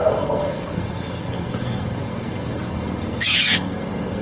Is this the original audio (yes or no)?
no